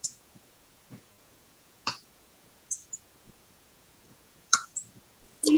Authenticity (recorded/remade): remade